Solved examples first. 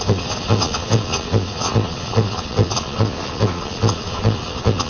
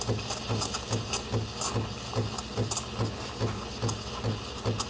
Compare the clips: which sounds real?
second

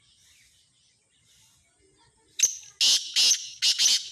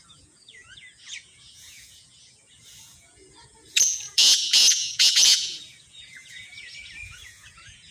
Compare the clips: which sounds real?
first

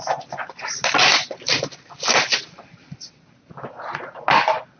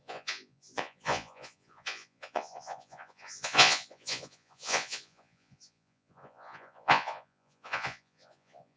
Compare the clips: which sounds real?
first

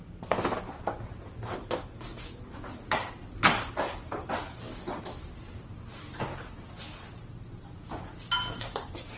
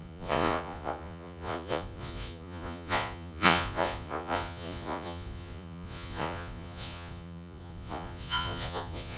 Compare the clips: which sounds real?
first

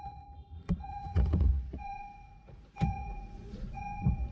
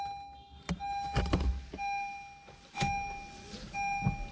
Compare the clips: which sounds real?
second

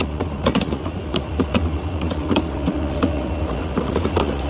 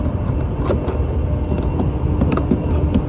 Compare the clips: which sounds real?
second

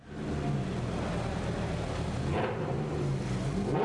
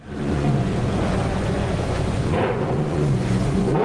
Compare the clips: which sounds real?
first